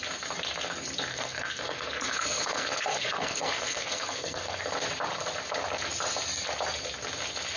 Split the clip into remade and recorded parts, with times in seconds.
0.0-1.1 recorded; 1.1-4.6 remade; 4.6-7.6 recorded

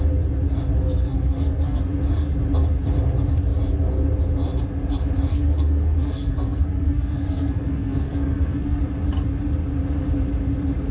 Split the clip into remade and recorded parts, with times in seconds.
0.0-0.8 recorded; 0.8-1.8 remade; 1.8-5.3 recorded; 5.3-8.8 remade; 8.8-10.9 recorded

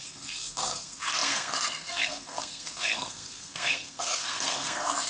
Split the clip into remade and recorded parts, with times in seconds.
0.0-5.1 remade

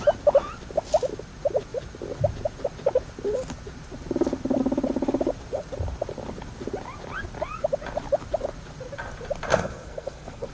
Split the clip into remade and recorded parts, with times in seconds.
0.0-9.5 recorded; 9.5-10.5 remade

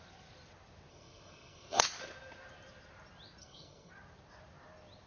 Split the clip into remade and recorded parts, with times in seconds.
0.0-0.9 recorded; 0.9-1.8 remade; 1.8-3.4 recorded; 3.4-3.9 remade; 3.9-5.1 recorded